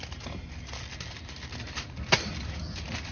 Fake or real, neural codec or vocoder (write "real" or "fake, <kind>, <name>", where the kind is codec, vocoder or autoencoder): real